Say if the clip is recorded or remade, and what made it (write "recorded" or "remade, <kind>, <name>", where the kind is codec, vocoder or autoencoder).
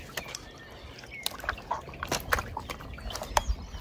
recorded